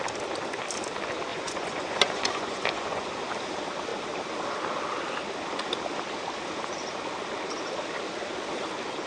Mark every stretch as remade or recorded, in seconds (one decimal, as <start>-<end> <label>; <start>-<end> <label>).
0.0-1.3 recorded; 1.3-3.1 remade; 3.1-9.1 recorded